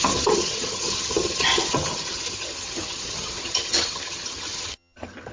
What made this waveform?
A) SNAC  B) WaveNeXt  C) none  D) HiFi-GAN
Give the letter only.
D